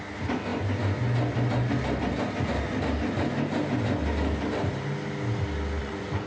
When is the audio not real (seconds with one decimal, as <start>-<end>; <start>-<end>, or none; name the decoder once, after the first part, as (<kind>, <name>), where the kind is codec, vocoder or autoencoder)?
5.8-6.3 (vocoder, Vocos)

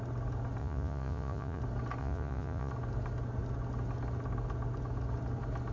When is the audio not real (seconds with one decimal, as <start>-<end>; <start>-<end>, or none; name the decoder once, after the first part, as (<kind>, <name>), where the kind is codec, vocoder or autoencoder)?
0.6-1.6 (vocoder, Vocos); 2.0-2.7

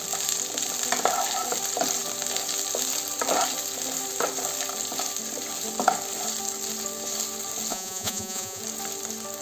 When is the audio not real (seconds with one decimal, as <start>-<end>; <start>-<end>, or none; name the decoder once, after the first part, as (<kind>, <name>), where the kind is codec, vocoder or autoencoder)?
7.7-8.6 (vocoder, Vocos)

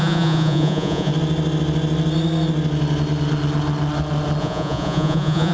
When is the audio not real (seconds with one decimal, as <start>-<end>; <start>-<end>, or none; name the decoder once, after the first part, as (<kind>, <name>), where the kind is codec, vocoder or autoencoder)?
0.0-1.1 (vocoder, Vocos); 4.4-5.5

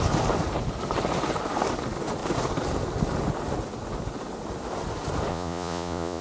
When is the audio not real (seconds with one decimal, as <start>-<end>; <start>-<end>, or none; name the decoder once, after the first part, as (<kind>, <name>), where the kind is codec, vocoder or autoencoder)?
5.3-6.2 (vocoder, Vocos)